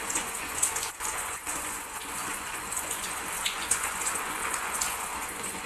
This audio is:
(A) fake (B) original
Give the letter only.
A